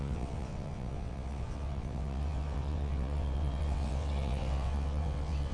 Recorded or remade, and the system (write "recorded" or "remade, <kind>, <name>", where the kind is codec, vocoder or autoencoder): remade, vocoder, WaveNeXt